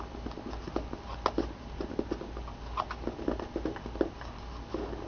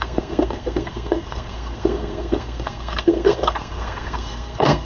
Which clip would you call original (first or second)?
first